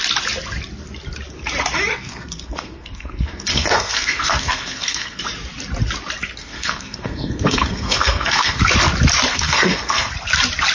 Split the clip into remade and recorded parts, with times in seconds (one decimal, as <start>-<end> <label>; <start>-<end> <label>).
0.0-1.9 recorded; 1.9-5.2 remade; 5.2-6.4 recorded; 6.4-8.6 remade; 8.6-9.3 recorded; 9.3-10.1 remade; 10.1-10.7 recorded